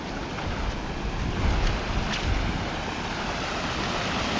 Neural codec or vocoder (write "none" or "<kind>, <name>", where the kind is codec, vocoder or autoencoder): none